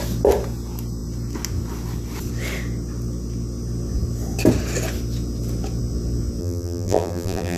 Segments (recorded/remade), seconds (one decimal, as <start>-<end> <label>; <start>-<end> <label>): 0.0-6.4 recorded; 6.4-7.6 remade